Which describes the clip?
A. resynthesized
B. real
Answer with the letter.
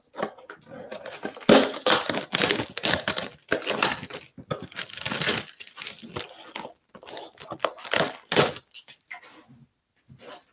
B